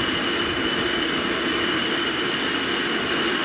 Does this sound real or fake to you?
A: real